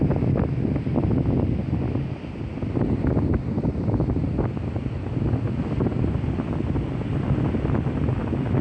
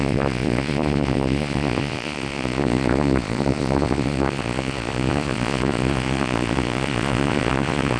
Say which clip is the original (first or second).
first